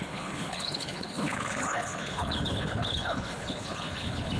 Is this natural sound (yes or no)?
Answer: no